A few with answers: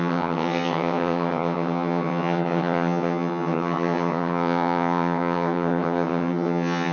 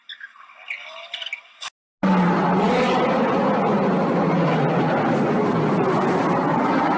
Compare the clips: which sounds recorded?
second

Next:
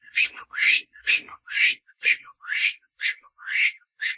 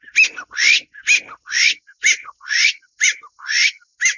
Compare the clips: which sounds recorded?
second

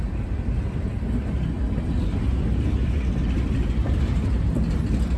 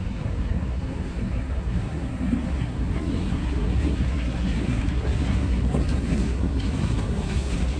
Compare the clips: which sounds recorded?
first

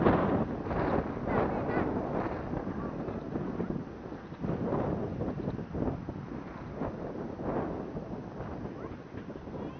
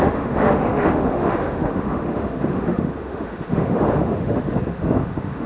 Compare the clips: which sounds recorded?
first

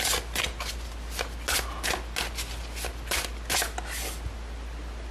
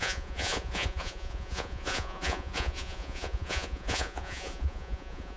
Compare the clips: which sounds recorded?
first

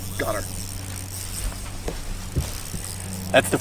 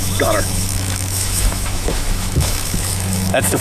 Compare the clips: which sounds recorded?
first